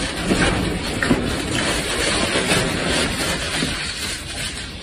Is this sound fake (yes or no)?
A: yes